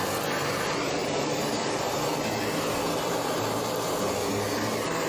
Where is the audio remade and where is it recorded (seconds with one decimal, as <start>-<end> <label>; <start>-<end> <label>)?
0.0-1.0 recorded; 1.0-4.1 remade; 4.1-5.1 recorded